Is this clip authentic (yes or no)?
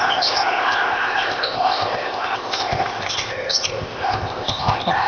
no